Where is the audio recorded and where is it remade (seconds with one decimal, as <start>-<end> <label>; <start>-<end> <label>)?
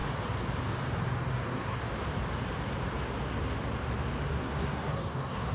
0.0-1.3 recorded; 1.3-1.8 remade; 1.8-4.3 recorded; 4.3-5.5 remade